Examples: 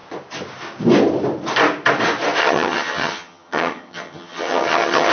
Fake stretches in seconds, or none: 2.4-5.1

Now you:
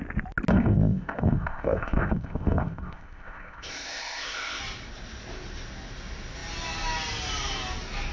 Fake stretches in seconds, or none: 0.5-4.6

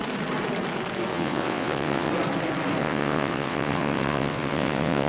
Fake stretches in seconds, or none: 1.1-2.1; 2.8-5.1

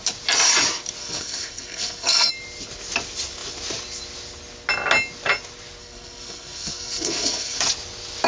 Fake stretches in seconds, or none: 1.0-2.3; 5.8-7.6

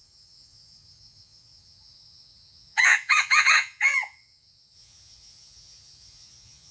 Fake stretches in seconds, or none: 0.0-6.7